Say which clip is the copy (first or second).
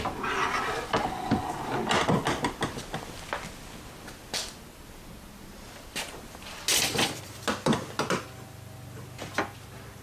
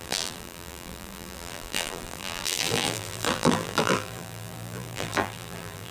second